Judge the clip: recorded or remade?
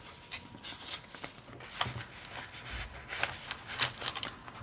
recorded